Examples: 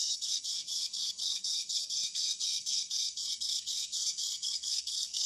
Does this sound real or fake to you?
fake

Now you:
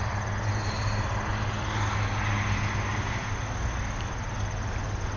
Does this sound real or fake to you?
real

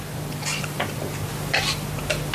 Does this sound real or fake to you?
real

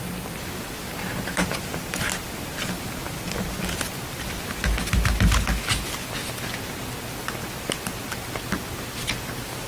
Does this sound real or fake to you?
real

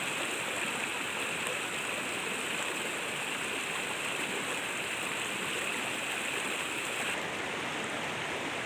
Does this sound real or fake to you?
real